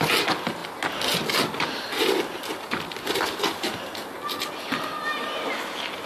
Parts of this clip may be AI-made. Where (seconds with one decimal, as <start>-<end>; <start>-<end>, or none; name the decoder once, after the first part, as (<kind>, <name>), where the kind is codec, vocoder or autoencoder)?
none